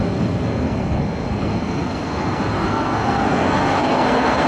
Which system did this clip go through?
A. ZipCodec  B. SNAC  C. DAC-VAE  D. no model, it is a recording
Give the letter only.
B